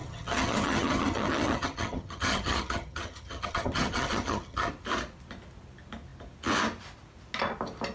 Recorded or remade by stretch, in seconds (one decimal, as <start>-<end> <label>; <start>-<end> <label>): 0.0-4.7 remade; 4.7-7.9 recorded